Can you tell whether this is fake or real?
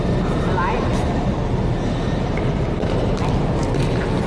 real